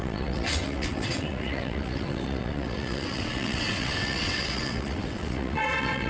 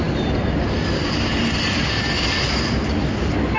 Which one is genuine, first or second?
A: second